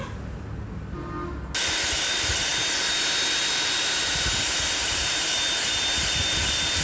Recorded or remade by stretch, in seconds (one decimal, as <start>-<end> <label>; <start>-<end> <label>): 0.0-6.8 recorded